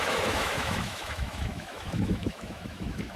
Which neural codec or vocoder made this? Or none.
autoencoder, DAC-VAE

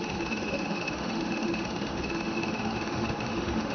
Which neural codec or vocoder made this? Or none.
autoencoder, DAC-VAE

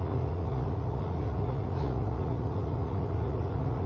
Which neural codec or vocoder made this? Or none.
vocoder, Vocos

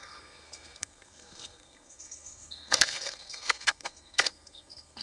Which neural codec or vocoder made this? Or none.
codec, SNAC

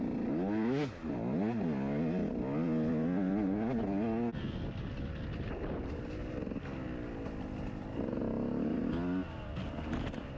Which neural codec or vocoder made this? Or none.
none